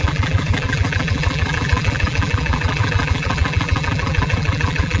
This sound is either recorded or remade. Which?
remade